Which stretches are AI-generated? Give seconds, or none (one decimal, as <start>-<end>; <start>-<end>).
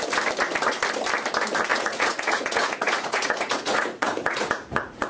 1.7-5.1